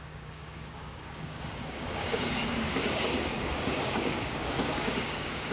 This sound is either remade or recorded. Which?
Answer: remade